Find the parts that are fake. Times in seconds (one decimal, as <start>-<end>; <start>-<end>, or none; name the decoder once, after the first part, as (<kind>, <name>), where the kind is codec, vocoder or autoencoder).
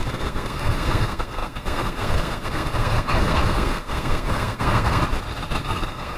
0.0-5.0 (codec, SNAC); 5.6-6.2